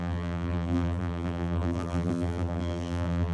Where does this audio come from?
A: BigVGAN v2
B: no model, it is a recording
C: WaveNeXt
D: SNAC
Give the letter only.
A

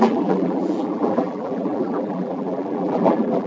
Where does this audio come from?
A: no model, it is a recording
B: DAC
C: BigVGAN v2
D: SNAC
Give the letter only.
C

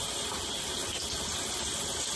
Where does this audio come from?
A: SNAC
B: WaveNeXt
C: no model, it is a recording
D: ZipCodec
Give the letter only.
C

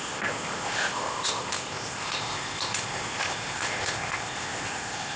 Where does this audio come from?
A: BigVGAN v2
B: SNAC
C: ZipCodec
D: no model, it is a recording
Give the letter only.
C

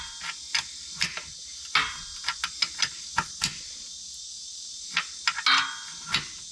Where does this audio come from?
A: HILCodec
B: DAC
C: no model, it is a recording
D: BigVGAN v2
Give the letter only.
C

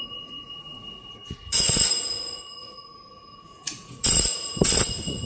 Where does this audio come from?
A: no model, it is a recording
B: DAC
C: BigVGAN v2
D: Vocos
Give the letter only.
D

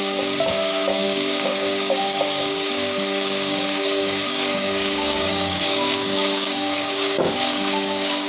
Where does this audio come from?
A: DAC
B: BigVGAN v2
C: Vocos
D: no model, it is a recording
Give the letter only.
A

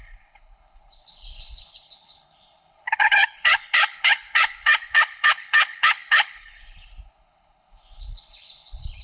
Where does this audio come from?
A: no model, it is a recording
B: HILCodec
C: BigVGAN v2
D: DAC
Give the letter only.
B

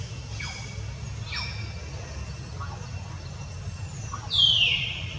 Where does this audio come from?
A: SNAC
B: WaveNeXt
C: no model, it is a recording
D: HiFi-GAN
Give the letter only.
C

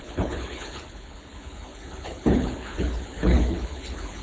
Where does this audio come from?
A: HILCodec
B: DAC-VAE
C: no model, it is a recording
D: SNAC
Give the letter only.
A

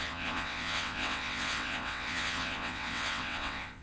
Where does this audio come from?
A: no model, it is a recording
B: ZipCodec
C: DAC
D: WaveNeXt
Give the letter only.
D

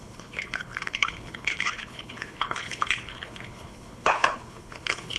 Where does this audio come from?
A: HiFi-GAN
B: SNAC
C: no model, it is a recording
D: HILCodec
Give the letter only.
D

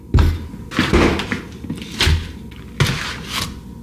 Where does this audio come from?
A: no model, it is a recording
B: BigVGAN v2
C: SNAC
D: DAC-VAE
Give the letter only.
A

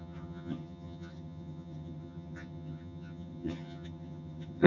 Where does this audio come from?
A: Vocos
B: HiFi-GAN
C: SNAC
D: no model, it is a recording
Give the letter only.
B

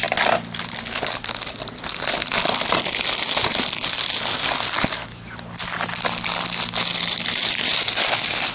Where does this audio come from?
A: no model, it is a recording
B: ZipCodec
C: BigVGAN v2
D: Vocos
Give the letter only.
A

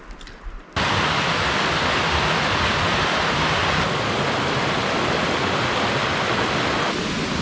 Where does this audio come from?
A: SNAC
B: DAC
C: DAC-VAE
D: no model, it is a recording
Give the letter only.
D